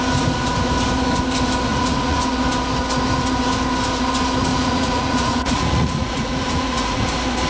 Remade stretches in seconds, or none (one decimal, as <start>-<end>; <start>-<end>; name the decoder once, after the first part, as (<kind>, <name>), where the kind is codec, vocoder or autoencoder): 1.7-2.2 (vocoder, Vocos); 4.5-7.1